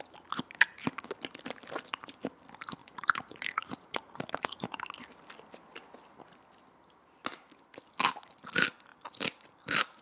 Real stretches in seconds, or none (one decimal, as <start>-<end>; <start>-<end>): 0.0-2.8; 4.8-10.0